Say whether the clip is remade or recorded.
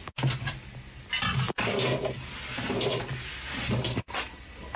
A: recorded